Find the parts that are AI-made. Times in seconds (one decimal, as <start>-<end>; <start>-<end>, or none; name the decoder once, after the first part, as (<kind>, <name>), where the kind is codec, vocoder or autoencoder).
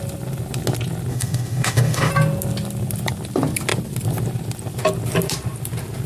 1.1-2.1 (autoencoder, DAC-VAE)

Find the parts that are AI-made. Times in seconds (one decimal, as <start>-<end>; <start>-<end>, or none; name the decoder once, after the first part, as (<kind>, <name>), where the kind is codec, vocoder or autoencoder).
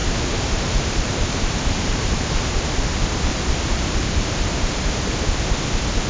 0.0-2.5 (vocoder, BigVGAN v2); 3.3-5.1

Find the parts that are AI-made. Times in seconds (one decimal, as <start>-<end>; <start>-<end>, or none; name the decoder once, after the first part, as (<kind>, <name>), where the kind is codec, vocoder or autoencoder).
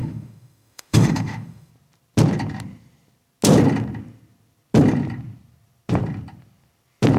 0.0-1.7 (autoencoder, DAC-VAE)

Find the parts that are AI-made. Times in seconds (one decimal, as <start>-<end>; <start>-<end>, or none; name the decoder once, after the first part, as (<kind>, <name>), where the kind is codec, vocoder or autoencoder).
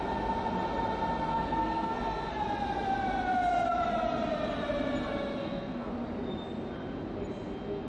1.3-2.4 (codec, SNAC); 5.4-5.9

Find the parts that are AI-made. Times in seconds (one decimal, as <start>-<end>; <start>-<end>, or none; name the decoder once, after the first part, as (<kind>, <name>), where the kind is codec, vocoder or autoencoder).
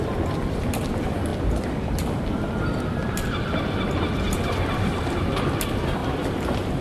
0.0-1.3 (vocoder, BigVGAN v2); 4.3-6.8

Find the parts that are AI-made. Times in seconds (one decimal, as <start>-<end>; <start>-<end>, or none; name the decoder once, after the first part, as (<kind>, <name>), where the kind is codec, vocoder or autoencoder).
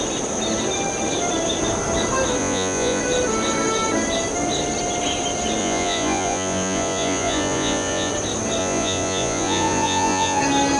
2.4-3.0 (vocoder, Vocos); 5.6-8.1; 8.6-10.4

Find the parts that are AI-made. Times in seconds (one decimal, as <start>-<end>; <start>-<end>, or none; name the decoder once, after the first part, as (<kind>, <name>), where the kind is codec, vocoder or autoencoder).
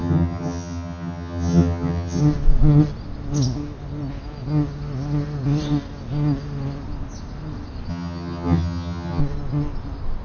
0.0-2.2 (vocoder, HiFi-GAN); 7.9-9.2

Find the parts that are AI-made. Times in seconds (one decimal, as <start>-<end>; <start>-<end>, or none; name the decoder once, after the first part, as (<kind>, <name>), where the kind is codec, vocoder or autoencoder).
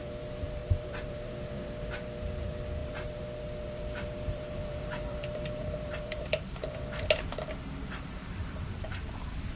0.0-6.6 (vocoder, BigVGAN v2); 7.9-9.6